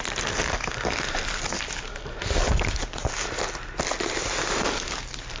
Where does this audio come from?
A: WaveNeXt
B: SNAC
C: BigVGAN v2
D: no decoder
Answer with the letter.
D